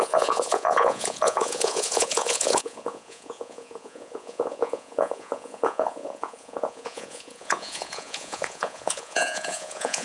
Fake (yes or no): yes